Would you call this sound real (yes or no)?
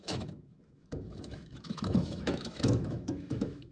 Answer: no